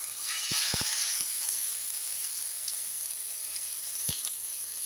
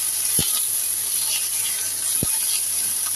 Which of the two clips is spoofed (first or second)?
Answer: first